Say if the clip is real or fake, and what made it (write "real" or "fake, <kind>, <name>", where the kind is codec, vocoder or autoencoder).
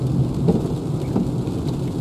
real